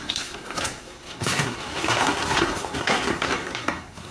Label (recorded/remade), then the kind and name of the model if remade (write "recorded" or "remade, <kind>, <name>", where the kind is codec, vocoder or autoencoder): remade, codec, SNAC